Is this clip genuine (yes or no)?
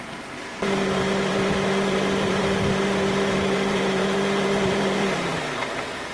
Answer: no